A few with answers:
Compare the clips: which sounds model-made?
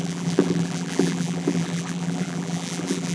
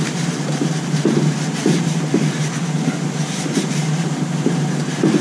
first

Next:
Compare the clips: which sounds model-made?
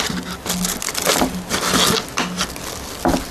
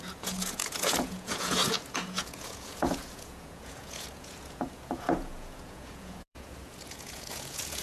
second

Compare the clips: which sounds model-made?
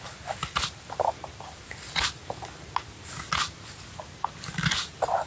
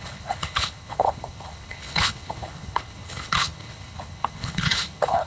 second